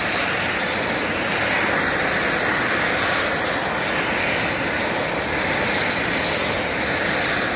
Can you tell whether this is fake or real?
real